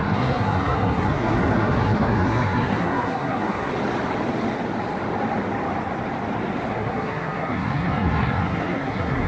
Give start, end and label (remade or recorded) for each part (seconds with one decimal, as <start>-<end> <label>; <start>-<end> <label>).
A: 0.0-3.7 remade; 3.7-6.7 recorded; 6.7-9.3 remade